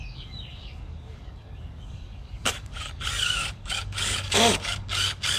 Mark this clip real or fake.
fake